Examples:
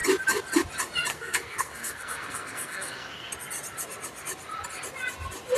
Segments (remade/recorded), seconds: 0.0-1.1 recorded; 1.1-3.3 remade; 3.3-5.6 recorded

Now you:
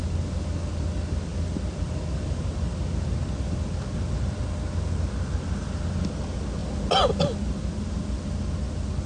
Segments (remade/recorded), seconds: 0.0-9.1 recorded

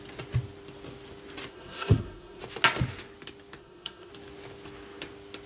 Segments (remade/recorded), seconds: 0.0-1.5 recorded; 1.5-2.4 remade; 2.4-3.6 recorded; 3.6-4.1 remade; 4.1-5.5 recorded

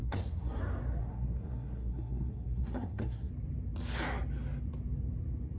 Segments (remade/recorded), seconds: 0.0-0.6 remade; 0.6-1.0 recorded; 1.0-3.3 remade; 3.3-5.6 recorded

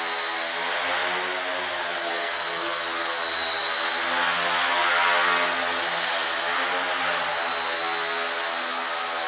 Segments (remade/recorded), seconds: 0.0-2.1 recorded; 2.1-2.8 remade; 2.8-9.3 recorded

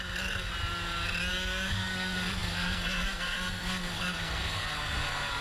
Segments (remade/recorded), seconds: 0.0-0.5 remade; 0.5-1.3 recorded; 1.3-5.4 remade

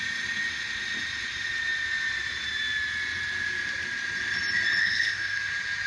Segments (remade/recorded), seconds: 0.0-4.8 recorded; 4.8-5.5 remade; 5.5-5.9 recorded

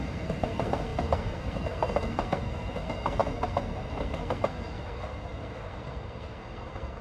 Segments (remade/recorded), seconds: 0.0-7.0 remade